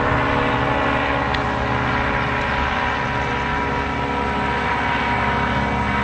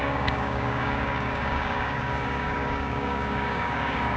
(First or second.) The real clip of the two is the first